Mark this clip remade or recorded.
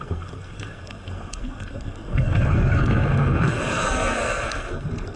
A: remade